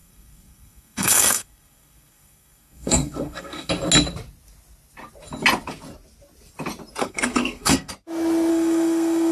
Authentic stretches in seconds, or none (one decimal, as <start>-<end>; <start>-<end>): 3.7-7.0; 7.9-8.5